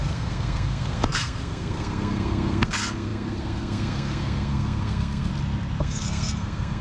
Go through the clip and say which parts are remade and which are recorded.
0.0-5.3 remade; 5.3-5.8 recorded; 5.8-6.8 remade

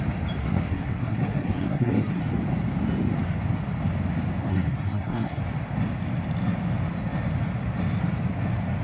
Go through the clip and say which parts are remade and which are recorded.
0.0-0.4 recorded; 0.4-2.2 remade; 2.2-4.5 recorded; 4.5-5.4 remade; 5.4-8.8 recorded

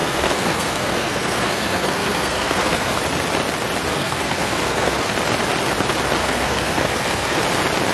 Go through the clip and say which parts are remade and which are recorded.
0.0-3.0 remade; 3.0-3.9 recorded; 3.9-5.1 remade; 5.1-6.2 recorded; 6.2-7.4 remade; 7.4-7.9 recorded

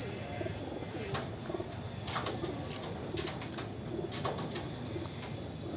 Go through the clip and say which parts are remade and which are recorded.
0.0-5.8 recorded

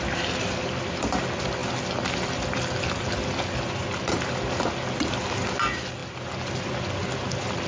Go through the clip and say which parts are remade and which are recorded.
0.0-7.7 recorded